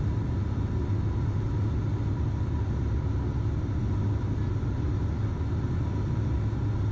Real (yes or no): yes